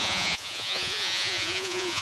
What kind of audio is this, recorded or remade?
remade